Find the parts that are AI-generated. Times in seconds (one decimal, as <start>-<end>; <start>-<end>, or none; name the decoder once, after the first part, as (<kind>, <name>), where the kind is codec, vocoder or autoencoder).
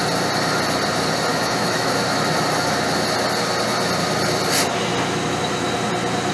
1.3-1.9 (autoencoder, DAC-VAE)